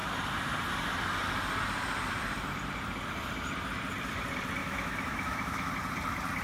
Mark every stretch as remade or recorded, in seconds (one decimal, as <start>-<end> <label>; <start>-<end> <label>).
0.0-4.6 recorded; 4.6-5.7 remade; 5.7-6.4 recorded